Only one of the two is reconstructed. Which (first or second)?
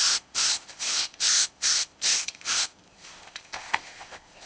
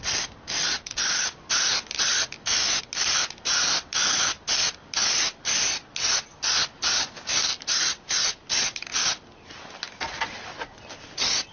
first